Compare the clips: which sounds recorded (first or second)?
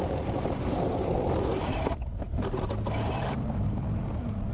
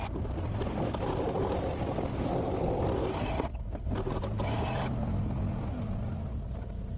second